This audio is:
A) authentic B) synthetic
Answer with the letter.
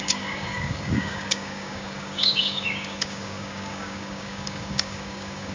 B